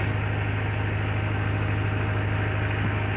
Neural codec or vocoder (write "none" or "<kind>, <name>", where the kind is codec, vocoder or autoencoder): none